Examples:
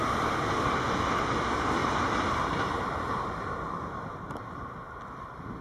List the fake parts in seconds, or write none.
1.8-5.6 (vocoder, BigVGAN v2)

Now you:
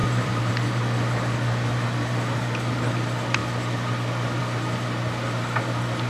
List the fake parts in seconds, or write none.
0.0-0.5 (vocoder, BigVGAN v2)